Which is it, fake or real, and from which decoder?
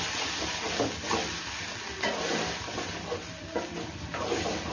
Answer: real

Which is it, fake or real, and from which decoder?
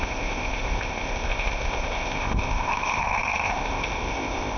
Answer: fake, codec, ZipCodec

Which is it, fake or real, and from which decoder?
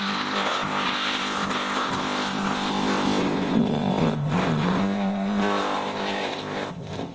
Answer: fake, codec, ZipCodec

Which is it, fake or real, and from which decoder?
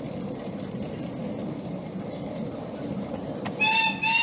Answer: real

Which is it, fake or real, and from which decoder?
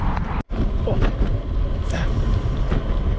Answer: real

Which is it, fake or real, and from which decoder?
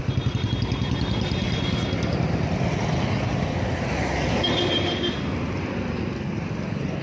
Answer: real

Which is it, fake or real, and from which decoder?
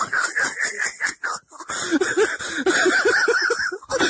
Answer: real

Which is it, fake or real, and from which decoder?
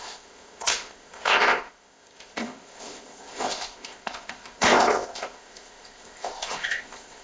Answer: fake, codec, ZipCodec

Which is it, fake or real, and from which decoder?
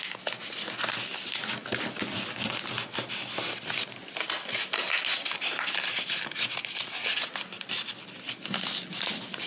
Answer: real